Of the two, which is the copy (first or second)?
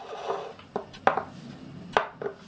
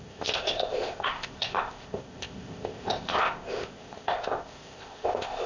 second